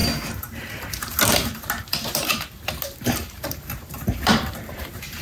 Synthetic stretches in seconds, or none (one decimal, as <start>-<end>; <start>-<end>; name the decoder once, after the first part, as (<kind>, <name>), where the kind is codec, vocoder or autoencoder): 3.1-5.2 (vocoder, BigVGAN v2)

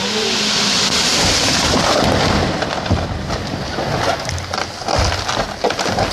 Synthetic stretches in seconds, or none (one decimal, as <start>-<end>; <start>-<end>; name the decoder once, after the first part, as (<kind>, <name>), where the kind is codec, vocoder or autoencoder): 1.1-2.0 (vocoder, BigVGAN v2)

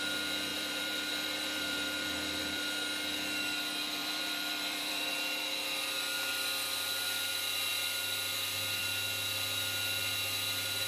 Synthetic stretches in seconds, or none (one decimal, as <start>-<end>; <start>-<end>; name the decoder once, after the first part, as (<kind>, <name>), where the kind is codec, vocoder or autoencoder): 0.5-2.6 (vocoder, BigVGAN v2); 4.0-5.4; 6.3-7.3

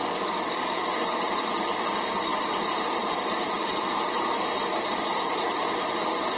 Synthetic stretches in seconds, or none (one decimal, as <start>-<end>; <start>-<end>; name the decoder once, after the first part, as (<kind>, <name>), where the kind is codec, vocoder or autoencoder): 1.3-6.4 (vocoder, BigVGAN v2)

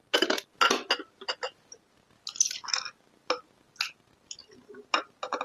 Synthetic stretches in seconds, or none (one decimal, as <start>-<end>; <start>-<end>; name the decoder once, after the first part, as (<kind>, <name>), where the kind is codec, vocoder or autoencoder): none

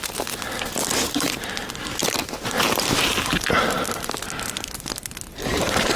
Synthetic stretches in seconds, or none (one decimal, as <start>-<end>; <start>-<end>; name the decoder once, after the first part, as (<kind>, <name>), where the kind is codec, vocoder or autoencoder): 2.0-2.9 (vocoder, BigVGAN v2)

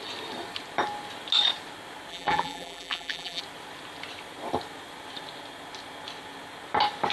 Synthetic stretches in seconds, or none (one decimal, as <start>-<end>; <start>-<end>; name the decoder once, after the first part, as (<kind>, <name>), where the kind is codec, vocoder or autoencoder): 2.1-3.4 (vocoder, BigVGAN v2)

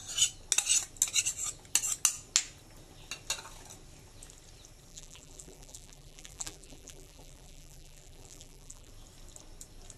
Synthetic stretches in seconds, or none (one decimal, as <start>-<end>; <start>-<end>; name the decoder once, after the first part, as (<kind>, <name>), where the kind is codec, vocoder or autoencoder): 4.9-8.9 (vocoder, BigVGAN v2)